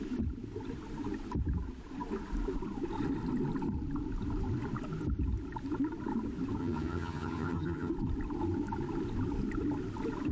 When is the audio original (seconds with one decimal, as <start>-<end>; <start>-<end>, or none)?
0.0-6.6; 7.9-10.3